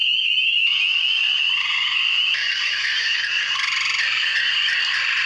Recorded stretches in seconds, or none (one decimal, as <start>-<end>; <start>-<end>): 0.0-1.0; 1.7-5.3